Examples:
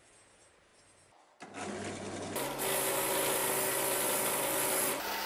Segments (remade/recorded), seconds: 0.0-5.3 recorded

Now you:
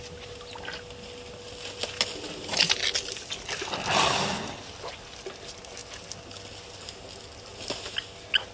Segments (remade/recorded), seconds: 0.0-8.5 recorded

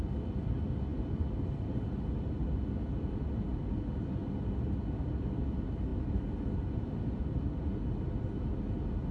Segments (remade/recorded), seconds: 0.0-9.1 recorded

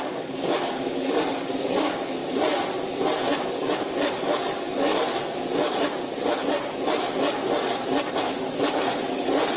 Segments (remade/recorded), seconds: 0.0-2.2 remade; 2.2-3.5 recorded; 3.5-4.9 remade; 4.9-8.2 recorded; 8.2-9.6 remade

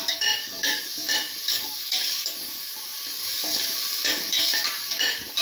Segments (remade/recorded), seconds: 0.0-5.4 remade